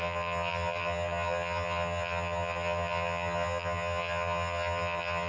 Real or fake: fake